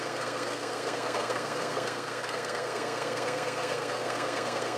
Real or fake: fake